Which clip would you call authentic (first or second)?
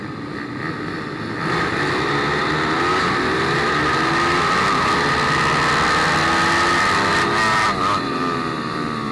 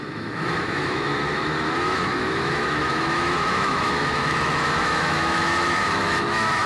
first